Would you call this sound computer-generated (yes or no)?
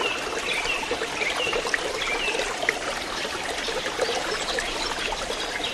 no